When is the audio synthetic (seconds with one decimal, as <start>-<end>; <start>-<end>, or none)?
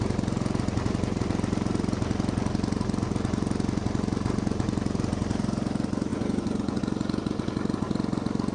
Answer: 6.1-6.8